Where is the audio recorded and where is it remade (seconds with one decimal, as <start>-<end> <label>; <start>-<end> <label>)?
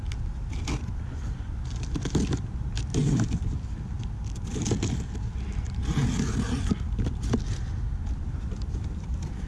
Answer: 0.0-9.5 recorded